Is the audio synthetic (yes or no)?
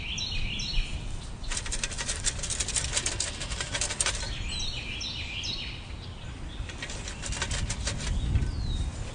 no